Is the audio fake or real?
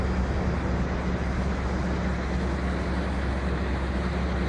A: real